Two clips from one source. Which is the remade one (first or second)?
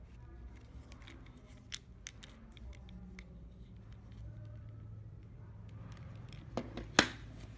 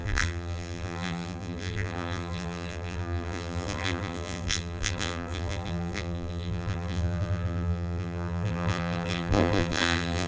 second